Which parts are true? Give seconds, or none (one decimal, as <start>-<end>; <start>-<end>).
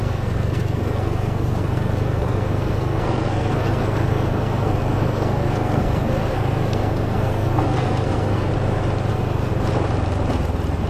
8.5-9.1; 9.5-10.9